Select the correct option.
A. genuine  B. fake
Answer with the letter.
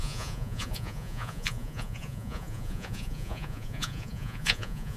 B